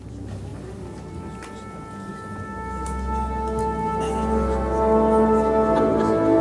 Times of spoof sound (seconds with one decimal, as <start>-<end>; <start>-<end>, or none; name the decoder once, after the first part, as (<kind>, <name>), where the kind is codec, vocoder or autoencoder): none

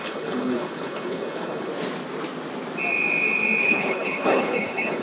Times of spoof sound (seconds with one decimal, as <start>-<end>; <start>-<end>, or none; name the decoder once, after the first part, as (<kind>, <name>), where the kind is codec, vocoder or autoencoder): 0.0-1.7 (codec, HILCodec); 3.6-5.0

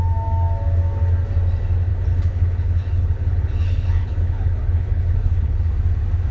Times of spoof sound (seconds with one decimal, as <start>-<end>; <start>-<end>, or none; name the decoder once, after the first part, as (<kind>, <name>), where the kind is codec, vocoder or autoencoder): 1.9-5.7 (codec, HILCodec)

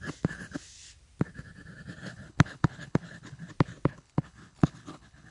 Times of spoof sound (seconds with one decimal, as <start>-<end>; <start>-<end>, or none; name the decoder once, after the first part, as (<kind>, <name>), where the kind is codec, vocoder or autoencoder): 2.0-3.5 (codec, HILCodec); 3.9-5.3

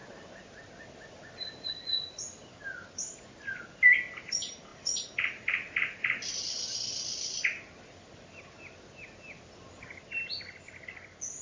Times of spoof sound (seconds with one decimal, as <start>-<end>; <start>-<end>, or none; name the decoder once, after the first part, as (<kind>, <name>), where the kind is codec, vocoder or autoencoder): none

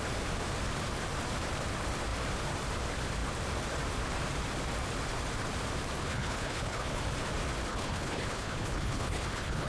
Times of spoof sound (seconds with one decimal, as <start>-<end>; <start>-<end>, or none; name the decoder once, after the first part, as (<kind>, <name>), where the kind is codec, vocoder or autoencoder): 6.0-7.0 (codec, HILCodec); 7.7-9.7

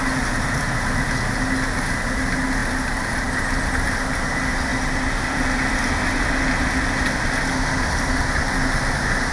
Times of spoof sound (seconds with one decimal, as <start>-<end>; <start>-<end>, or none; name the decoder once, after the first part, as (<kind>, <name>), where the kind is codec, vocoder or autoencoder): none